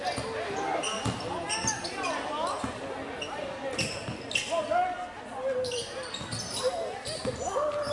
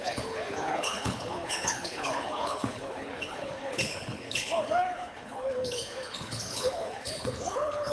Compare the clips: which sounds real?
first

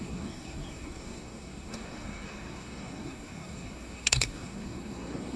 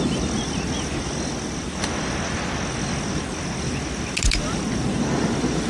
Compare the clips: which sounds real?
second